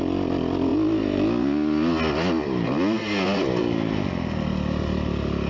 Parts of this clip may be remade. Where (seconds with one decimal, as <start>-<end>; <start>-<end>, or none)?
none